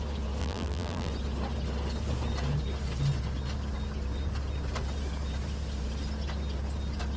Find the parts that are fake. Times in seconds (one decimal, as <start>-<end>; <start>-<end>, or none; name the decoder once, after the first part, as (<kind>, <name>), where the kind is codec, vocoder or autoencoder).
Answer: 0.4-1.1 (vocoder, BigVGAN v2)